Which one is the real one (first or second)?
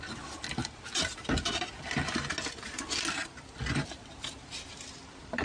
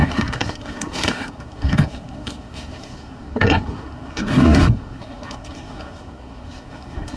first